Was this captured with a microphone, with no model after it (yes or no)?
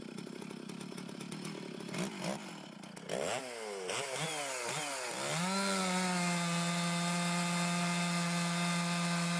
yes